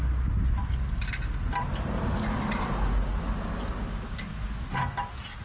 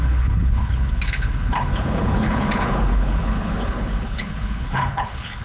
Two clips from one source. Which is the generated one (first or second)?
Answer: second